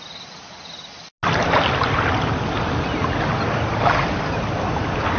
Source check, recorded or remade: recorded